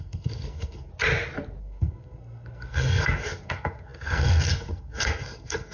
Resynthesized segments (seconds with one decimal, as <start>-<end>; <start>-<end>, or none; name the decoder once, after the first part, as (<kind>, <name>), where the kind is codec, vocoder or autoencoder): 0.0-0.9 (codec, SNAC); 1.6-5.7